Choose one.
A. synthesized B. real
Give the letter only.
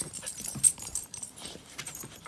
A